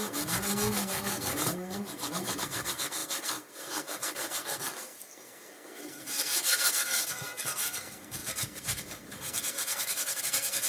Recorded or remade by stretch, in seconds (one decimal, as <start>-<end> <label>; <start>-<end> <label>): 0.0-10.7 remade